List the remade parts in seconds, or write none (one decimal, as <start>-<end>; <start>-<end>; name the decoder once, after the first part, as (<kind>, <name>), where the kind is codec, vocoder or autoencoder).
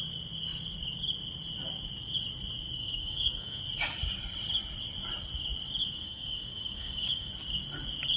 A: 2.8-3.6 (codec, DAC); 5.8-7.3